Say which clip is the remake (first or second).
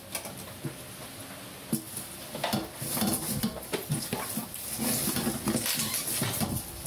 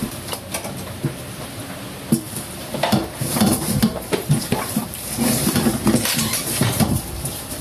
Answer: second